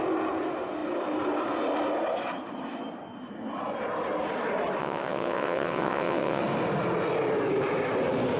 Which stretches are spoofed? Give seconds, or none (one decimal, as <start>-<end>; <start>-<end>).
4.8-6.4